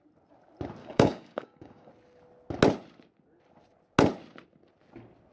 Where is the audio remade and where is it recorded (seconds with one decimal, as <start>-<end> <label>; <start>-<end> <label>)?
0.0-0.8 recorded; 0.8-1.9 remade; 1.9-5.3 recorded